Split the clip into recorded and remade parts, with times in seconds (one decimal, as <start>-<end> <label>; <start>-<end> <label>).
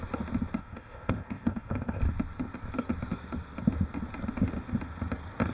0.0-0.6 recorded; 0.6-2.0 remade; 2.0-5.5 recorded